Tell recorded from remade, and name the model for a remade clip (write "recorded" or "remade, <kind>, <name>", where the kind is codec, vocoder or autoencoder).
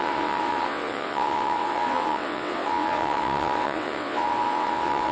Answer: remade, vocoder, WaveNeXt